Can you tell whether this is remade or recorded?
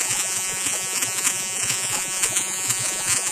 remade